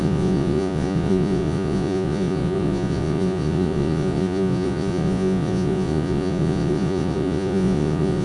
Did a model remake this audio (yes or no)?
yes